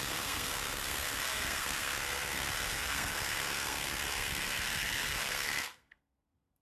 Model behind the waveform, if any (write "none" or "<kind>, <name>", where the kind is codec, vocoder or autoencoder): codec, SNAC